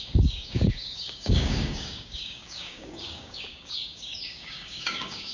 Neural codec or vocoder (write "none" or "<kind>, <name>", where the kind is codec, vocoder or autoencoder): codec, DAC